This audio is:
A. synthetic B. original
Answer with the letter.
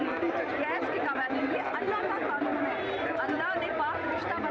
A